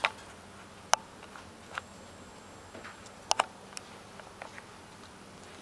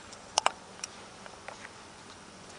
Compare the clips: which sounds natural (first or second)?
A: first